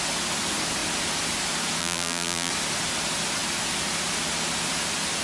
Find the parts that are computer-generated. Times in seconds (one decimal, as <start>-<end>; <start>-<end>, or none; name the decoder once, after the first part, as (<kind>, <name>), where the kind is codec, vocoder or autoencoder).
1.8-2.5 (vocoder, BigVGAN v2)